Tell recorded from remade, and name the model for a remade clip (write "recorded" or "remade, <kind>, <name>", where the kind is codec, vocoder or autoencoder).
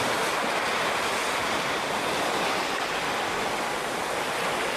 recorded